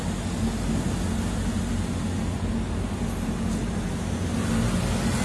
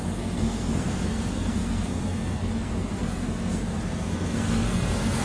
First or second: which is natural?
first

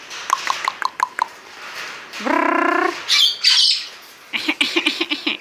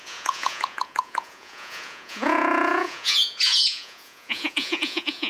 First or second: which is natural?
first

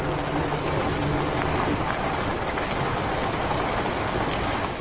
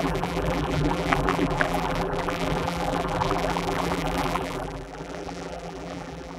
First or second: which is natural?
first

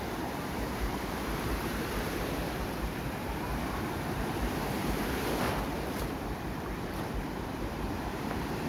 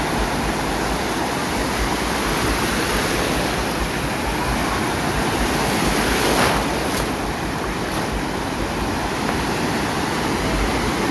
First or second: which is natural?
second